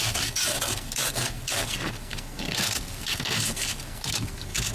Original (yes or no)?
no